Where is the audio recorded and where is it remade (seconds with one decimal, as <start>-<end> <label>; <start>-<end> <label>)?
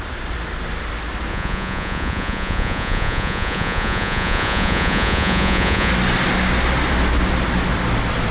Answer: 0.0-1.3 recorded; 1.3-5.9 remade; 5.9-8.3 recorded